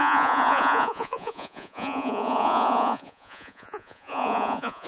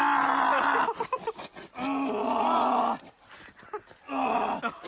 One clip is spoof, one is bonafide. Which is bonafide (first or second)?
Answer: second